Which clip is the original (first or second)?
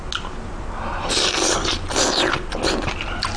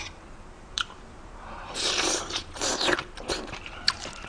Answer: first